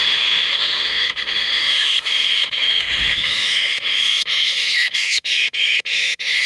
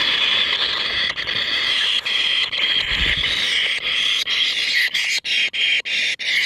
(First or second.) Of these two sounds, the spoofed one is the first